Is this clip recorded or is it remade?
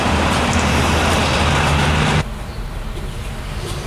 remade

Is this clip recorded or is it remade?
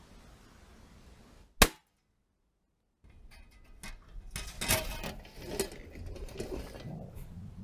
recorded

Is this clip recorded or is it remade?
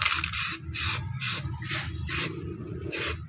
recorded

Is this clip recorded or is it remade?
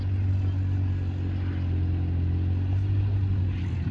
recorded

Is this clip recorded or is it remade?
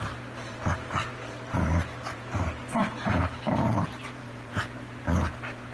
remade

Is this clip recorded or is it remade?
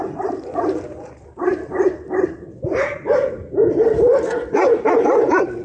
remade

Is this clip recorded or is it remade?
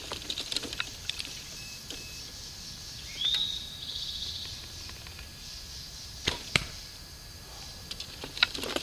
remade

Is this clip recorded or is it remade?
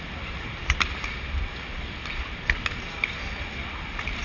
recorded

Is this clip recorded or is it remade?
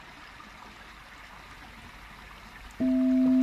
recorded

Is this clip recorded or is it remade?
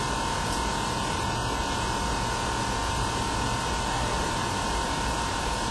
recorded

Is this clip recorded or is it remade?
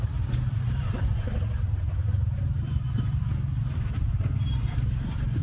remade